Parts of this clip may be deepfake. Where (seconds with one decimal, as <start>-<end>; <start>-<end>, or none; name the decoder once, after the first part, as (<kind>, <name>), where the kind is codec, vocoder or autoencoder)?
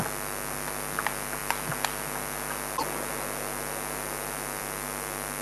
none